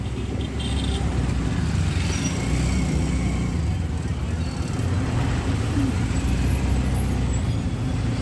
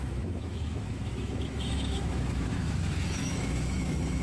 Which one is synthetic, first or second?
second